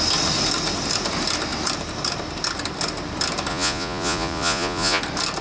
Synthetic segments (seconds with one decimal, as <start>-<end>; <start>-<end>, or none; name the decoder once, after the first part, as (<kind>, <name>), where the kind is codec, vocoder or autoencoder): 3.5-5.0 (vocoder, Vocos)

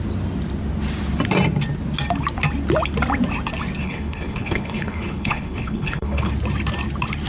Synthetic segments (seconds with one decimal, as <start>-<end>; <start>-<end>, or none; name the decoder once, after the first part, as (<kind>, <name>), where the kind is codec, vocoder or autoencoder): 3.8-6.3 (codec, HILCodec)

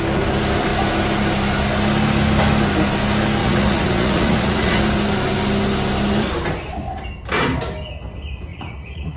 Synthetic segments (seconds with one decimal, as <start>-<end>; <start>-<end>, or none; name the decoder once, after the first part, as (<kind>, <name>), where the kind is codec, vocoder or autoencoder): 3.4-4.8 (vocoder, Vocos); 8.5-9.2

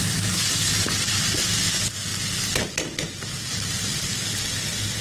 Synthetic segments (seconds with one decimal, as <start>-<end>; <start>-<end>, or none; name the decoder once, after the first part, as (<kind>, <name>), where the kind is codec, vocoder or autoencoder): none

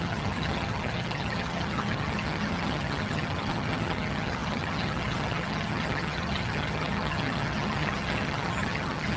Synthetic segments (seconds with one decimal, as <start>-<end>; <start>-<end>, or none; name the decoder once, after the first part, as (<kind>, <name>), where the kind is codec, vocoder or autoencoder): 0.0-9.2 (vocoder, HiFi-GAN)

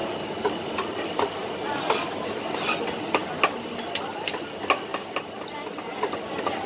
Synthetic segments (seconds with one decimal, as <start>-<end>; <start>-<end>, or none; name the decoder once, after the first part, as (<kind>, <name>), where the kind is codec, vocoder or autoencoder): none

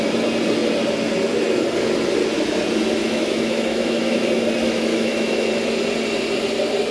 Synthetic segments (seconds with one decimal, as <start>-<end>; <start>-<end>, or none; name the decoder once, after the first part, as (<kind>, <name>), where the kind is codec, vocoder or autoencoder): 3.0-4.2 (autoencoder, DAC-VAE); 4.9-5.5

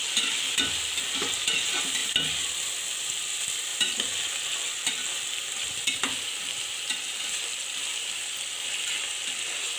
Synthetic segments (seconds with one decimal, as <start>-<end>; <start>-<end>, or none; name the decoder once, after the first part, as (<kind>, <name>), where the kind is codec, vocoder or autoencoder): 3.7-8.7 (vocoder, BigVGAN v2)